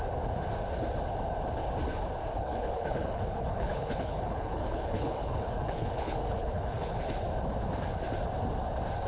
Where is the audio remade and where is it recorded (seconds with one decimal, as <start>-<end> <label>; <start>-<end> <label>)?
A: 0.0-2.3 recorded; 2.3-7.0 remade; 7.0-9.1 recorded